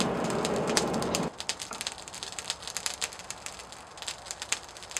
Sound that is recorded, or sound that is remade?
remade